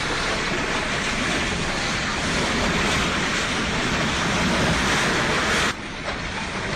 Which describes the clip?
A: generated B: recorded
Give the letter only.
B